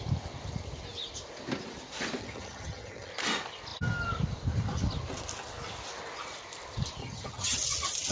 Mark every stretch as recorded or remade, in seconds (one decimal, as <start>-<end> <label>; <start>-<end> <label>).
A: 0.0-2.2 recorded; 2.2-3.1 remade; 3.1-7.0 recorded; 7.0-7.6 remade; 7.6-8.1 recorded

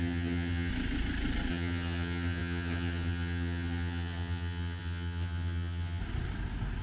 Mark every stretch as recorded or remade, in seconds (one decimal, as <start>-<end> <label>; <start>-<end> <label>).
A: 0.0-0.7 remade; 0.7-1.5 recorded; 1.5-6.0 remade; 6.0-6.8 recorded